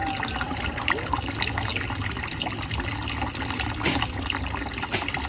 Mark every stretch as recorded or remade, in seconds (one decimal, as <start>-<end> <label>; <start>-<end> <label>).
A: 0.0-5.3 recorded